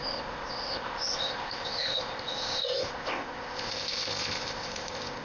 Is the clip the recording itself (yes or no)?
no